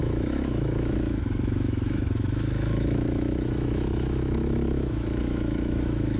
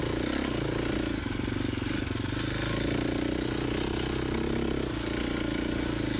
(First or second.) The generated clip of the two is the first